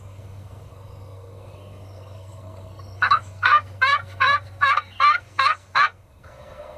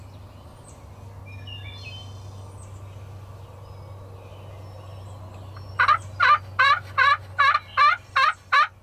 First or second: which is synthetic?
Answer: first